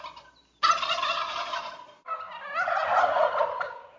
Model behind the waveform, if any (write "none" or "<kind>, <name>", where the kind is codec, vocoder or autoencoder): none